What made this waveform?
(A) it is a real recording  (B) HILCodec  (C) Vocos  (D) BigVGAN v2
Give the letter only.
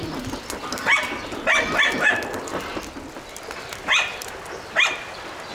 A